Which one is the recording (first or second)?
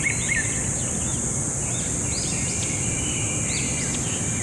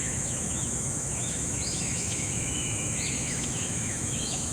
first